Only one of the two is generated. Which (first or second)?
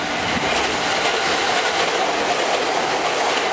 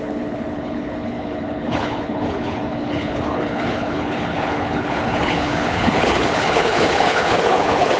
second